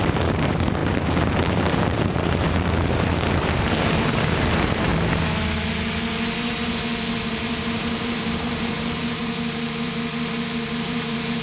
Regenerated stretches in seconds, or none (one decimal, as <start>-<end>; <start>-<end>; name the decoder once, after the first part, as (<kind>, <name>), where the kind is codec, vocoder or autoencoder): 0.0-4.9 (vocoder, BigVGAN v2); 7.3-11.4